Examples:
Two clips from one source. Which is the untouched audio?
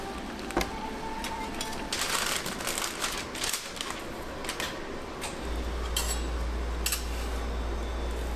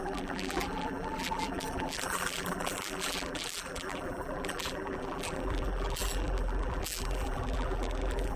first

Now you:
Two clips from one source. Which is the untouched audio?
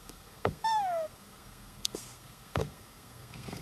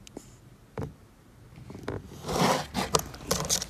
second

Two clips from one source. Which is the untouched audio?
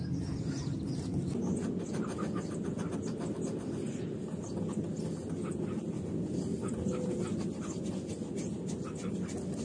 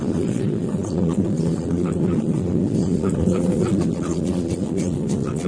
first